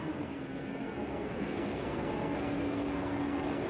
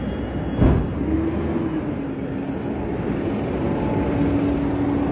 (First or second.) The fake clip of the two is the first